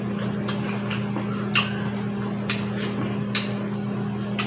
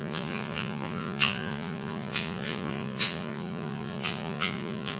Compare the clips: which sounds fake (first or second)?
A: second